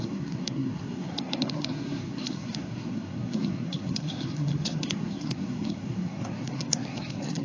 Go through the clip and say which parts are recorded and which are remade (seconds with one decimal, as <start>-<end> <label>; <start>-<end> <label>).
0.0-7.4 remade